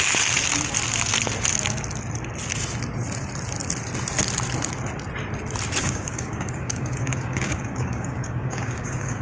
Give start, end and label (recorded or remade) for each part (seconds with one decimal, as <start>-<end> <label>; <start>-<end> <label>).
0.0-5.8 recorded; 5.8-9.2 remade